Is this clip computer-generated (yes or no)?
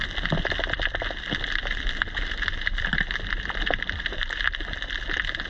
no